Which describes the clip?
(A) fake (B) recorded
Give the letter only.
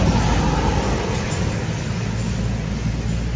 B